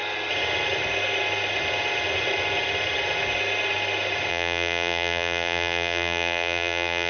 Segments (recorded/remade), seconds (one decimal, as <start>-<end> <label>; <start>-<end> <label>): 0.0-4.3 recorded; 4.3-7.1 remade